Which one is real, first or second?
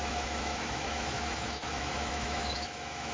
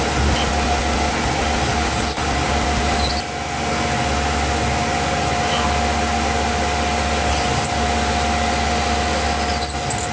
second